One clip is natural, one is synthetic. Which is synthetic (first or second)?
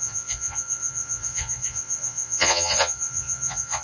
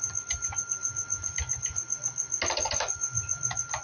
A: first